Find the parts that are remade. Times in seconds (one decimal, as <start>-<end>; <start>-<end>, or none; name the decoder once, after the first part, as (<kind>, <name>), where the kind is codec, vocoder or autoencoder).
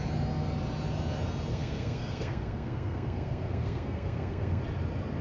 1.5-4.6 (codec, SNAC)